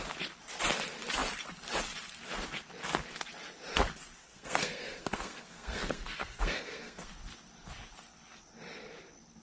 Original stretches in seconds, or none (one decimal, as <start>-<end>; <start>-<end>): 0.0-4.2; 7.1-9.4